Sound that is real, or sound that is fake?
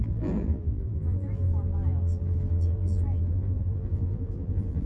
fake